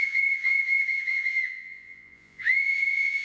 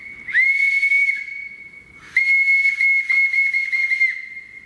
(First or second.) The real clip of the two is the second